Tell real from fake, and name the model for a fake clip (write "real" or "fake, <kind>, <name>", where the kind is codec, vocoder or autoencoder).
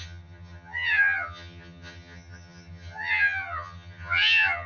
fake, vocoder, HiFi-GAN